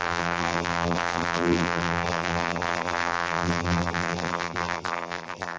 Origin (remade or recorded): remade